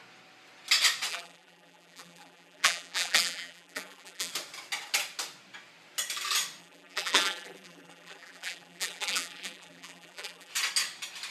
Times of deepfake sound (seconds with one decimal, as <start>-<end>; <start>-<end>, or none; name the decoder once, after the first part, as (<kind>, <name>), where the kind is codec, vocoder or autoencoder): 1.1-4.3 (vocoder, BigVGAN v2); 6.6-10.5